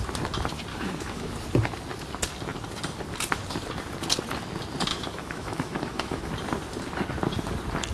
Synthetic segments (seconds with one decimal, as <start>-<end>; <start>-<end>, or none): 0.7-1.3; 4.9-6.3